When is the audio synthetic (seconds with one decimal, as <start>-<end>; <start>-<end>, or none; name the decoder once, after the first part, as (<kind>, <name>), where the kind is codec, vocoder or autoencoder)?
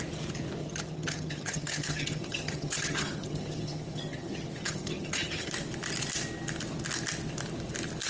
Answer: 0.6-5.5 (vocoder, HiFi-GAN)